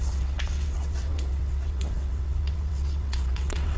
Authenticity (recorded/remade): remade